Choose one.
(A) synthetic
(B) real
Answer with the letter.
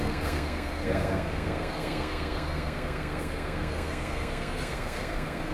A